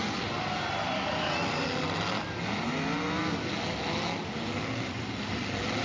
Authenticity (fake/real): real